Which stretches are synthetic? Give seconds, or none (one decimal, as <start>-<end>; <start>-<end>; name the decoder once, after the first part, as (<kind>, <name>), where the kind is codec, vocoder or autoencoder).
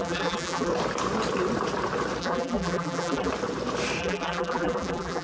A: 0.0-0.7 (vocoder, BigVGAN v2); 2.2-3.3; 4.0-5.2